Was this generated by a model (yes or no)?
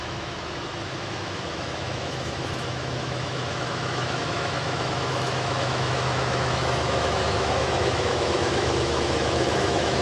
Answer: yes